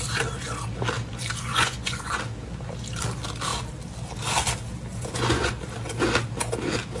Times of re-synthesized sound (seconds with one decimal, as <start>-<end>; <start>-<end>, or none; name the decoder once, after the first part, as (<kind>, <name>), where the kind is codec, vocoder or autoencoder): 1.5-2.2 (vocoder, Vocos); 4.9-5.5

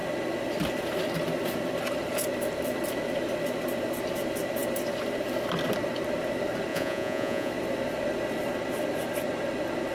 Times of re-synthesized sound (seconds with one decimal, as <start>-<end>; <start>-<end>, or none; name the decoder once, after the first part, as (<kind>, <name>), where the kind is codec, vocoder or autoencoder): 6.7-7.5 (vocoder, Vocos)

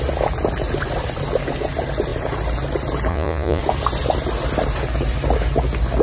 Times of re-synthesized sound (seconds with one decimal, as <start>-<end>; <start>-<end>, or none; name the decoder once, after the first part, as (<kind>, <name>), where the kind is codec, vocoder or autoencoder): 3.1-3.6 (vocoder, Vocos)

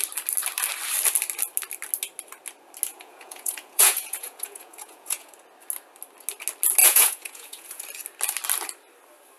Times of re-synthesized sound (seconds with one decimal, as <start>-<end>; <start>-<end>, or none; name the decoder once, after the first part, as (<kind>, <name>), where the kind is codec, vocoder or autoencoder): 2.9-5.3 (vocoder, Vocos); 6.8-7.8

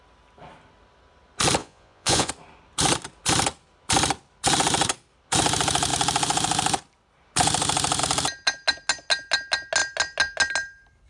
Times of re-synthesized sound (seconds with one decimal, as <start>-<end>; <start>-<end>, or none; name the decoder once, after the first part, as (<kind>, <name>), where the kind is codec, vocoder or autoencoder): 1.6-2.3 (vocoder, Vocos)

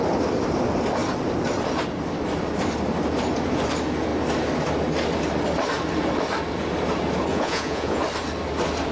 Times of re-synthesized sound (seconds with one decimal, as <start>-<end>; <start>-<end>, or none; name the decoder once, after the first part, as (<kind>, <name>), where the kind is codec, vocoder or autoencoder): 7.3-8.0 (vocoder, Vocos)

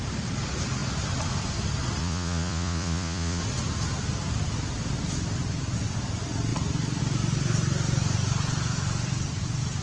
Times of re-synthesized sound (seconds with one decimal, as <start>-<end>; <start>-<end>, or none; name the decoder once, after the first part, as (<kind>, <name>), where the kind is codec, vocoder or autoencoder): 2.0-3.4 (vocoder, Vocos)

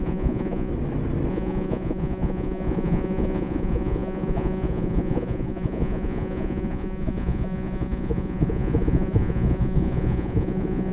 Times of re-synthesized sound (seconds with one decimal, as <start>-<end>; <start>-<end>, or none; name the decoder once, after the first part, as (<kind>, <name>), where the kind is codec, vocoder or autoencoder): 0.0-0.7 (vocoder, Vocos); 1.3-10.9